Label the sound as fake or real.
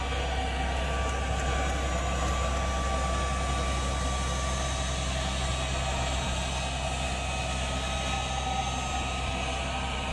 real